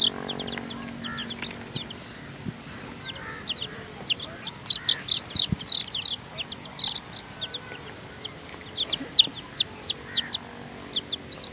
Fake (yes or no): no